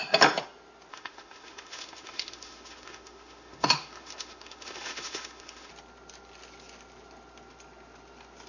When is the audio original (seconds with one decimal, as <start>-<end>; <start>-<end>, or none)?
0.0-0.9; 5.7-8.5